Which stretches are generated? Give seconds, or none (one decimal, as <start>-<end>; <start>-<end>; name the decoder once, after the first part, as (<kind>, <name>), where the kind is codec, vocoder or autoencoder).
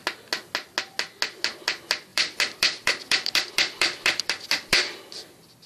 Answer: 2.1-5.7 (vocoder, BigVGAN v2)